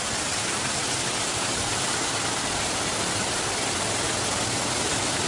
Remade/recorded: recorded